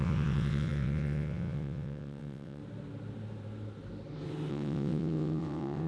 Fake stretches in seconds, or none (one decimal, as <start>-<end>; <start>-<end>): 0.0-2.6; 4.5-5.9